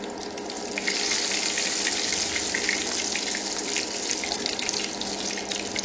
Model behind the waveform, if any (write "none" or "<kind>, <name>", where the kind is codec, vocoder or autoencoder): none